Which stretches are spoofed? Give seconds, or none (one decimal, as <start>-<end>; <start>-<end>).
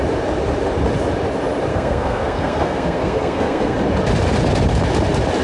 1.7-3.8